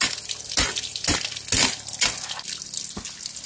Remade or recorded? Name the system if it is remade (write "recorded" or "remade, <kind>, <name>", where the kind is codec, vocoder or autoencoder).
recorded